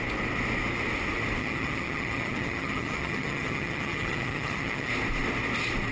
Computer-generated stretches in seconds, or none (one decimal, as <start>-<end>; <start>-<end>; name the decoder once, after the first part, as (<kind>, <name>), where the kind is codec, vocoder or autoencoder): 1.4-4.9 (vocoder, HiFi-GAN)